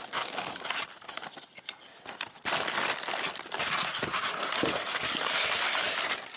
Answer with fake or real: real